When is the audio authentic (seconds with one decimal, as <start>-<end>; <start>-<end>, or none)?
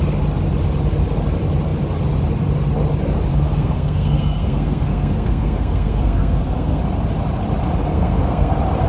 0.0-3.3; 6.8-7.9; 8.5-8.9